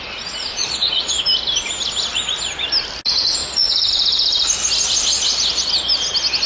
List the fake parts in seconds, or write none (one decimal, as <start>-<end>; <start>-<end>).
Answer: 0.5-1.2; 3.4-3.9